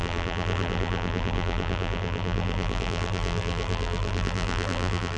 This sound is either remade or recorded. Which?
remade